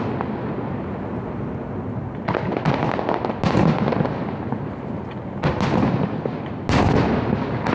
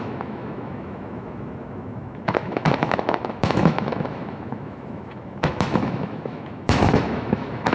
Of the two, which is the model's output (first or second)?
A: second